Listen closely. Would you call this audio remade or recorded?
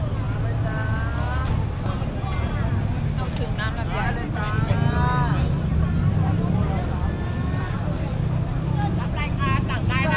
recorded